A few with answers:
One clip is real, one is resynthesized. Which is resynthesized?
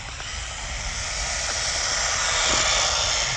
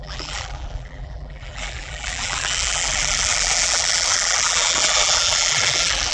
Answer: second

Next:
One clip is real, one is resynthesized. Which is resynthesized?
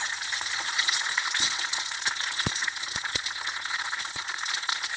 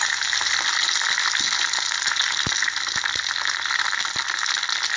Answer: first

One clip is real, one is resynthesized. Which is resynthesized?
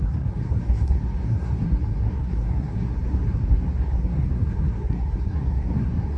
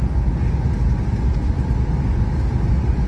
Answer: first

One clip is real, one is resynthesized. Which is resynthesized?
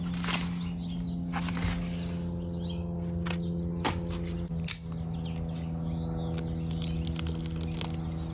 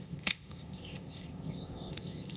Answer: second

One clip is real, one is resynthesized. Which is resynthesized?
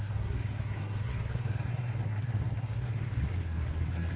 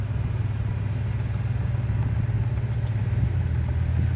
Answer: first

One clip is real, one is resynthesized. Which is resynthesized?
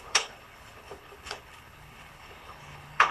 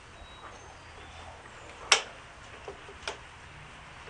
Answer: first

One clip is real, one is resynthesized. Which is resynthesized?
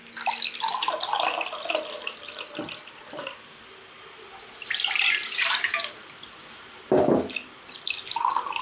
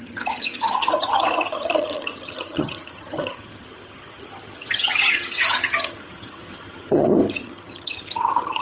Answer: second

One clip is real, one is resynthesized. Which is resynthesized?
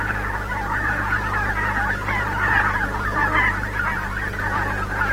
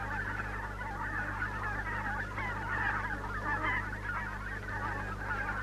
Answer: first